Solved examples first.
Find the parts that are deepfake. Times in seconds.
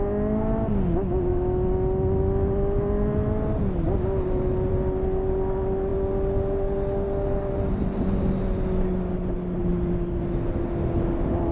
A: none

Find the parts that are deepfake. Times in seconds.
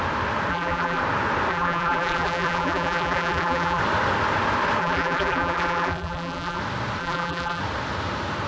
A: 0.5-1.0 (vocoder, BigVGAN v2); 1.5-3.8; 4.8-6.6; 7.0-7.6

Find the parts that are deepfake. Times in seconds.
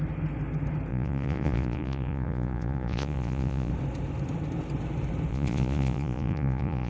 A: 0.9-3.7 (vocoder, Vocos); 5.3-6.9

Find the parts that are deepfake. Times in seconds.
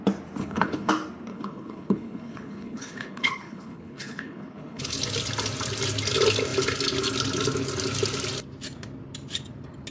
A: 0.4-0.9 (codec, HILCodec); 1.3-5.0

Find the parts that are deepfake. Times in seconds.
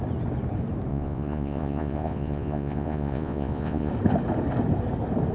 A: 0.9-3.9 (vocoder, Vocos)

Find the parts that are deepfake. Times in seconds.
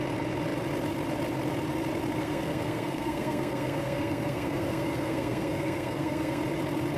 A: 2.2-6.4 (codec, SNAC)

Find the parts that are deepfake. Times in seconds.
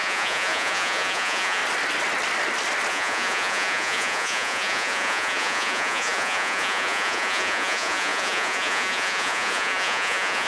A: 0.0-1.6 (vocoder, Vocos); 2.9-10.5